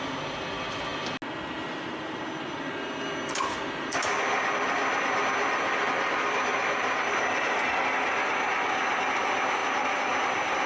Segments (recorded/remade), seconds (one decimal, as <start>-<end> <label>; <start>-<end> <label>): 0.0-10.7 recorded